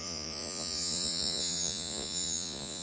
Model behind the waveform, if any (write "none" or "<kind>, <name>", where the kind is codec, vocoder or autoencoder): vocoder, Vocos